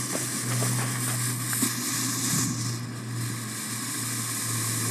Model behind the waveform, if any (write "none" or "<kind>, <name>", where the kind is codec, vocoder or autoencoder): none